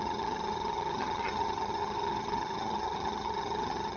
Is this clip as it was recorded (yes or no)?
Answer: no